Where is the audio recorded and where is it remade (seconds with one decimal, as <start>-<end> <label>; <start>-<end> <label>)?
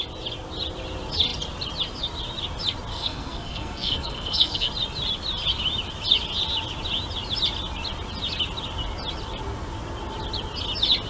0.0-2.9 recorded; 2.9-4.7 remade; 4.7-11.1 recorded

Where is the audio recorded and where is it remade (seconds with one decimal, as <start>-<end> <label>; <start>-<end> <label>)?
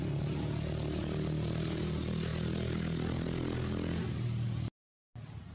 0.0-5.5 recorded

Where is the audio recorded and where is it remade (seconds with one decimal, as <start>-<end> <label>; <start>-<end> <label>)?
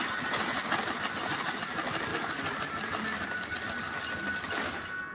0.0-5.1 recorded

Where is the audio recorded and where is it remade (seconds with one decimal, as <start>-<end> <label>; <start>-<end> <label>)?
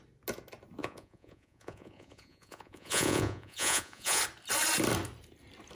0.0-0.8 recorded; 0.8-4.2 remade; 4.2-5.7 recorded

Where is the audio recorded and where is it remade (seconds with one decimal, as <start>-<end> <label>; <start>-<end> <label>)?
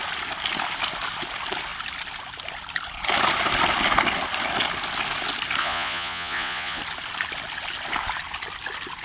0.0-5.6 recorded; 5.6-6.8 remade; 6.8-9.0 recorded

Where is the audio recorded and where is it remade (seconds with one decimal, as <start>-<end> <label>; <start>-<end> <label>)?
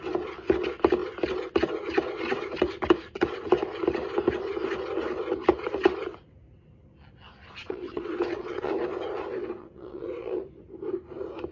0.0-7.6 recorded; 7.6-8.7 remade; 8.7-9.6 recorded; 9.6-10.4 remade; 10.4-11.5 recorded